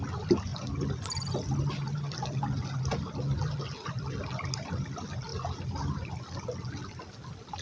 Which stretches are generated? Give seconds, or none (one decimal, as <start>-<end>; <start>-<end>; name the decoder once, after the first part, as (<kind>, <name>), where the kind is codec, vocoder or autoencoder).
none